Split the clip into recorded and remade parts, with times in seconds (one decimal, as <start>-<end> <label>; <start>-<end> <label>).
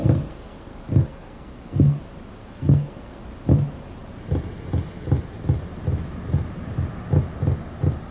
0.0-2.0 remade; 2.0-2.4 recorded; 2.4-3.2 remade; 3.2-8.1 recorded